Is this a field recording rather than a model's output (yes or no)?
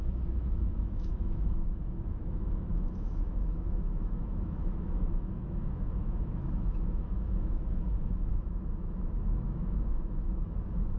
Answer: no